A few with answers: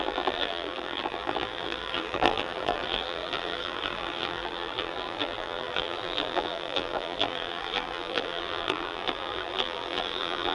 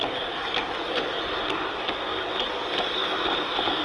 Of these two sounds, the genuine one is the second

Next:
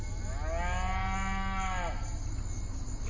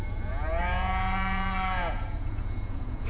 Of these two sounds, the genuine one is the first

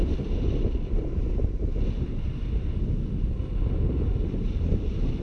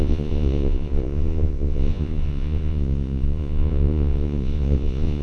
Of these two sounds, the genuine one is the first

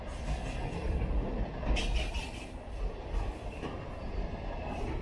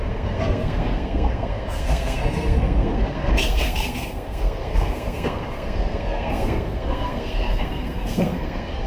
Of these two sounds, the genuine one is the first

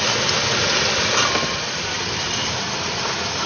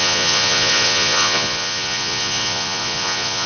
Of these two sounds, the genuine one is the first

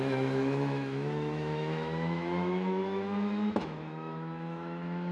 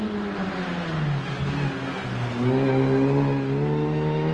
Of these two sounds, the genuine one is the second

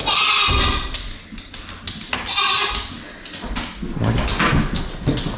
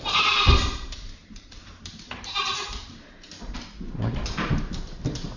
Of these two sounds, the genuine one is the first